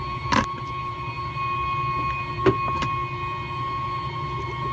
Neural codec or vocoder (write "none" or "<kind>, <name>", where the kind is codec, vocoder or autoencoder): none